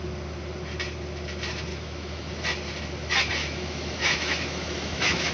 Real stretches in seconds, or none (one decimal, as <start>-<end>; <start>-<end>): 0.0-1.7; 2.3-3.4